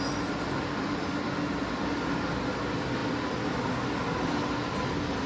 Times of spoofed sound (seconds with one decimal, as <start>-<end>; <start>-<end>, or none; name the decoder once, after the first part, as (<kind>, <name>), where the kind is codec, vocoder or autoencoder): none